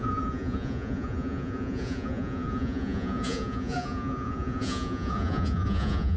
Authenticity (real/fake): fake